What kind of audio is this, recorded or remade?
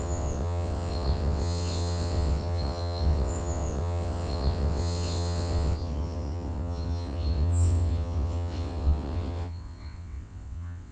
remade